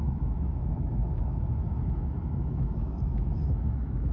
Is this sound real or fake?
fake